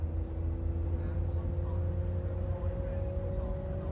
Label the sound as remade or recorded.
recorded